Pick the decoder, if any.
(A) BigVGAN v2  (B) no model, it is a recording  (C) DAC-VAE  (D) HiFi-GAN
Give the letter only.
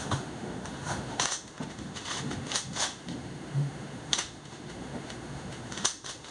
C